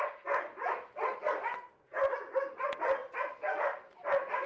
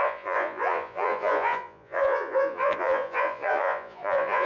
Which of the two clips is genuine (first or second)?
first